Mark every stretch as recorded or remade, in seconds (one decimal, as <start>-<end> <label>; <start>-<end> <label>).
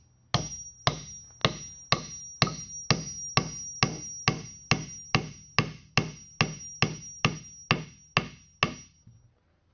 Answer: 0.0-9.7 recorded